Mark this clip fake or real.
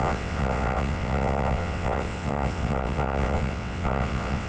fake